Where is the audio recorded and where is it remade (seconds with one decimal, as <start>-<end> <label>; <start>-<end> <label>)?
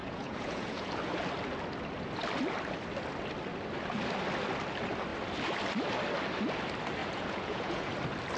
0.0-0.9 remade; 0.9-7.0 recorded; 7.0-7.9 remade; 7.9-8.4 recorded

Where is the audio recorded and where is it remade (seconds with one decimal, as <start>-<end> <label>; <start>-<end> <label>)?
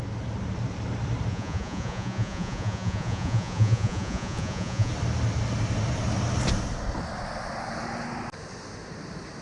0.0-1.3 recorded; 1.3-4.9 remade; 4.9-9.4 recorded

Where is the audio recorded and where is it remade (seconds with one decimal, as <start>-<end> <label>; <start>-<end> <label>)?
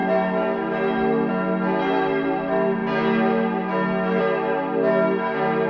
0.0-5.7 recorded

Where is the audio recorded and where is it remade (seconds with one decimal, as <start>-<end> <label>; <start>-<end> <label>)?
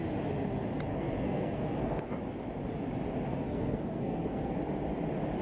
0.0-0.9 recorded; 0.9-2.2 remade; 2.2-3.3 recorded; 3.3-4.5 remade; 4.5-5.4 recorded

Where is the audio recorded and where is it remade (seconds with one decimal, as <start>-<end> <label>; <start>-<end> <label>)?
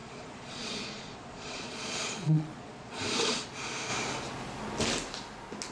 0.0-3.0 remade; 3.0-5.7 recorded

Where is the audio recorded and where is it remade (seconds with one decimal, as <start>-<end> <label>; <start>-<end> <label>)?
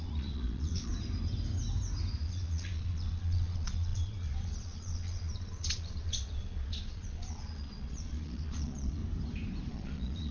0.0-0.9 remade; 0.9-2.2 recorded; 2.2-9.0 remade; 9.0-9.7 recorded; 9.7-10.3 remade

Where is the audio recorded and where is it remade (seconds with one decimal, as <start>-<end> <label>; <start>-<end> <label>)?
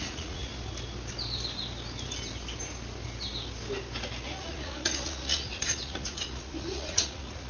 0.0-0.5 remade; 0.5-4.2 recorded; 4.2-7.5 remade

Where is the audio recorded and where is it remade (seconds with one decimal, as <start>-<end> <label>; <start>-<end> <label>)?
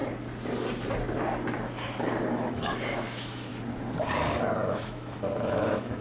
0.0-2.3 recorded; 2.3-3.5 remade; 3.5-4.7 recorded; 4.7-6.0 remade